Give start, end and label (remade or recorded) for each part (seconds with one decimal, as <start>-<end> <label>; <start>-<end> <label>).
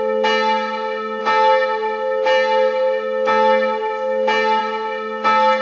0.0-5.6 recorded